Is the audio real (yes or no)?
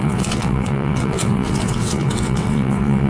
no